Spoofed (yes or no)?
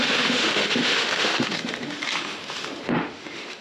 yes